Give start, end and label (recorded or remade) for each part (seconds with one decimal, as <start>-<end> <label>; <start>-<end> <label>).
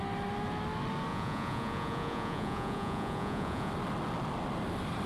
0.0-1.1 recorded; 1.1-3.7 remade; 3.7-5.1 recorded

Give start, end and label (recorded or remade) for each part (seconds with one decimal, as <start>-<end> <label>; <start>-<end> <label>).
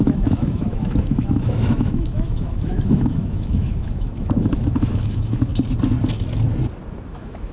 0.0-5.5 remade; 5.5-7.1 recorded; 7.1-7.5 remade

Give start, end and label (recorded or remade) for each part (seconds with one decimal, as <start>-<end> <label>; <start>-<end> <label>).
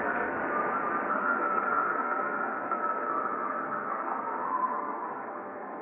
0.0-0.4 remade; 0.4-1.1 recorded; 1.1-5.8 remade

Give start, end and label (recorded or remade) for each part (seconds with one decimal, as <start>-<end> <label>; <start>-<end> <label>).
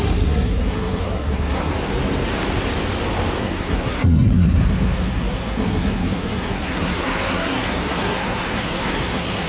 0.0-1.7 remade; 1.7-3.4 recorded; 3.4-9.5 remade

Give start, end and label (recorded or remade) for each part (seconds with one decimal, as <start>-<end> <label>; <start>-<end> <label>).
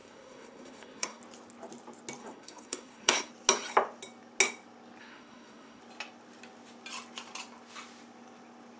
0.0-1.2 remade; 1.2-2.2 recorded; 2.2-3.3 remade; 3.3-5.0 recorded; 5.0-5.8 remade; 5.8-8.8 recorded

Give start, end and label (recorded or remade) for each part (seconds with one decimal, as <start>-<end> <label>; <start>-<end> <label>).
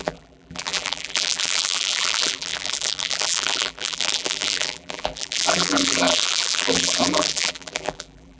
0.0-8.4 remade